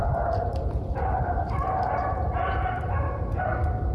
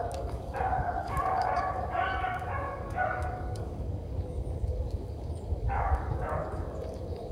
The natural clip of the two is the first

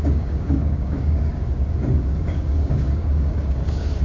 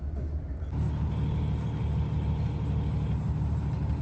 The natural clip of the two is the second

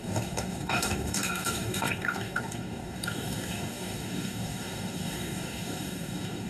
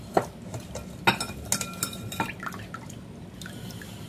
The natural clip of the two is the second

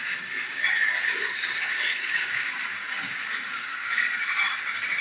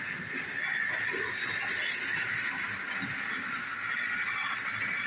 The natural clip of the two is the second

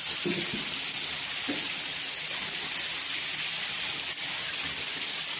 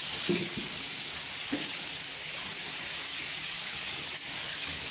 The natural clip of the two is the first